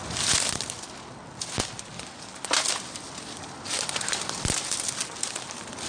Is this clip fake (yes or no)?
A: no